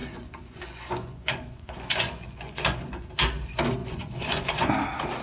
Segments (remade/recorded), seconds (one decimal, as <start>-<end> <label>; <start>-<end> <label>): 0.0-3.1 remade; 3.1-3.8 recorded; 3.8-4.7 remade; 4.7-5.2 recorded